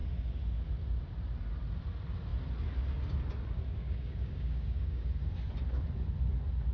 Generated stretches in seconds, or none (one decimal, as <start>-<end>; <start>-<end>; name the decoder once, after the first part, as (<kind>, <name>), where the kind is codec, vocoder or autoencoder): 3.7-5.1 (codec, DAC)